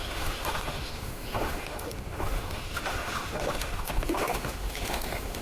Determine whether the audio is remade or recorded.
remade